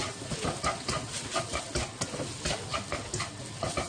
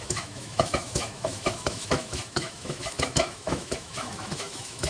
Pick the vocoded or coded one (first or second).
second